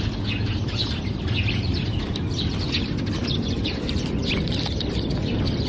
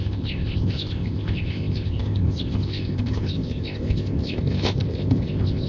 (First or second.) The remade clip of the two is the second